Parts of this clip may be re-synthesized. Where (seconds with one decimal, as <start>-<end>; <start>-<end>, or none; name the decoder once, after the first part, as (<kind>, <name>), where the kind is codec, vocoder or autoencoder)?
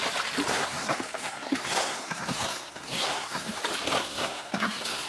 0.5-3.6 (codec, SNAC); 4.0-5.1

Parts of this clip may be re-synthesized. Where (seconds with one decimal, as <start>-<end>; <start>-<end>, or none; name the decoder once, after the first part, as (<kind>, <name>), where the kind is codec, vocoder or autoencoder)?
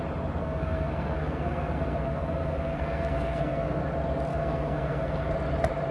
0.4-3.8 (codec, SNAC); 4.3-5.3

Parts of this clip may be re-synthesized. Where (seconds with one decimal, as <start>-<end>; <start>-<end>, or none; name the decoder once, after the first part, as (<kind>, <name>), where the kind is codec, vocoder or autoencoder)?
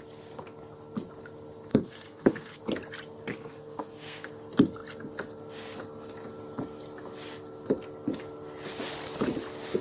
1.7-2.6 (codec, SNAC); 3.3-4.3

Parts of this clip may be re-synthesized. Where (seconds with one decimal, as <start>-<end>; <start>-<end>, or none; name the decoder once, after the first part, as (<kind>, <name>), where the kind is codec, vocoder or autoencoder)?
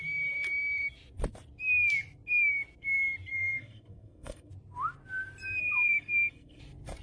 3.3-4.5 (codec, SNAC); 5.6-6.6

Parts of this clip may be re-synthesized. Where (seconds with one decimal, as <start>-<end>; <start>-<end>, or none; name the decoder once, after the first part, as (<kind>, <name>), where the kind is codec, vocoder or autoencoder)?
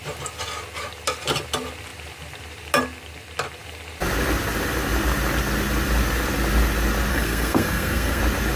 7.1-8.2 (codec, SNAC)